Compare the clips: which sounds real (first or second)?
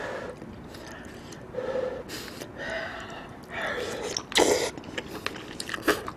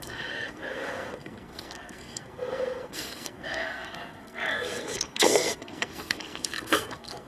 first